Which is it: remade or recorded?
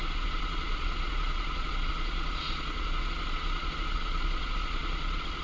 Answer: remade